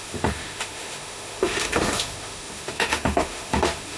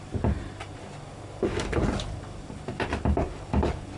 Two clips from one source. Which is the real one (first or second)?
second